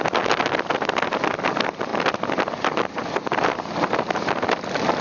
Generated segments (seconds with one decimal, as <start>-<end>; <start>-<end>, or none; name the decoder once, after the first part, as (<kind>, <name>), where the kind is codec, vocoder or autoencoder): none